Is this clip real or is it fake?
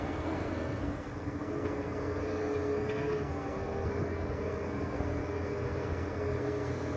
fake